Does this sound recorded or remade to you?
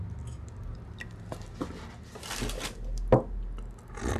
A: recorded